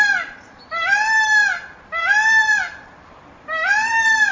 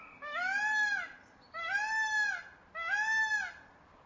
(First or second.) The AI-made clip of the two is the first